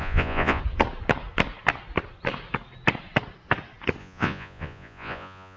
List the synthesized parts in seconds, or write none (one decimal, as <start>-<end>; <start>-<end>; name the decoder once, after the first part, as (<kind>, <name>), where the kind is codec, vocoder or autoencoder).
0.0-0.6 (vocoder, Vocos); 4.0-5.6